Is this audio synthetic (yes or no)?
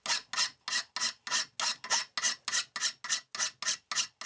no